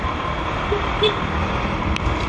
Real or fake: real